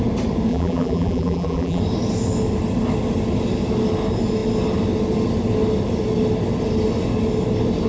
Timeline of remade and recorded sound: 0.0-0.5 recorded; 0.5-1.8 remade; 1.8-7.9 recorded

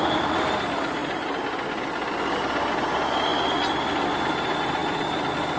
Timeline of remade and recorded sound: 0.0-3.3 remade; 3.3-4.2 recorded; 4.2-5.6 remade

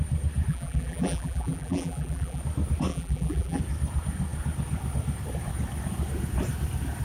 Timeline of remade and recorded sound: 0.0-0.5 recorded; 0.5-2.4 remade; 2.4-2.9 recorded; 2.9-3.6 remade; 3.6-7.0 recorded